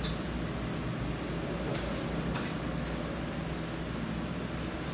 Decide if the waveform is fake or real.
real